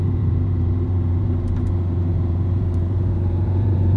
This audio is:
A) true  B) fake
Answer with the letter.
B